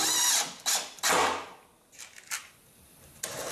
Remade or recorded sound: recorded